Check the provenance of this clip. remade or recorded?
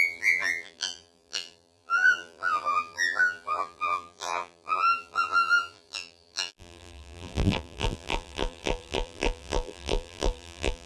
remade